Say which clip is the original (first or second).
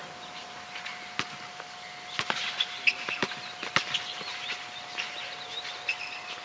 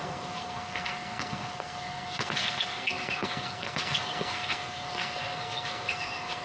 first